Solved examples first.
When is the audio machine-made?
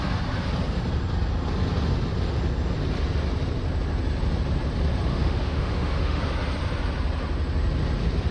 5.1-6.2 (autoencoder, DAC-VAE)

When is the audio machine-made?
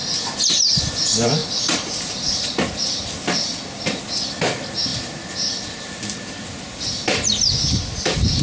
none